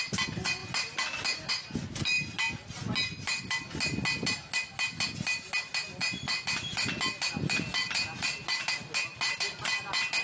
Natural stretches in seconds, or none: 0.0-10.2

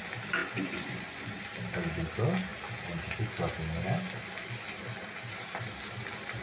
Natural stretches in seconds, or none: 0.0-0.4; 1.3-6.4

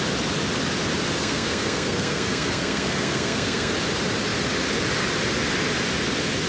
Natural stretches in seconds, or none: 0.0-1.2; 3.7-6.5

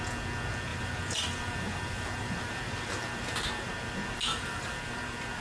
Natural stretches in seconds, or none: 0.0-0.7; 3.7-4.3

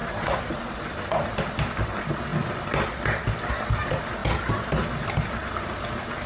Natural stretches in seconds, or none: 0.5-6.3

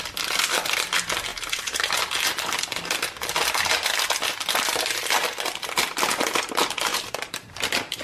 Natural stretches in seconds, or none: 0.0-1.3; 1.9-6.9; 7.5-8.0